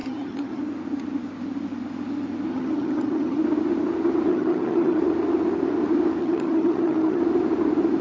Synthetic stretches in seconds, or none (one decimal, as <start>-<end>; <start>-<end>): 0.0-0.6; 2.5-3.4; 4.3-5.0; 6.2-7.2